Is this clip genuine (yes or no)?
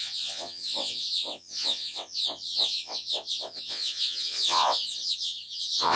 no